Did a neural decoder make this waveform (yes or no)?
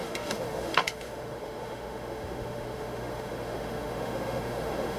yes